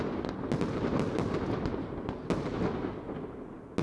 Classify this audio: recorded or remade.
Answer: recorded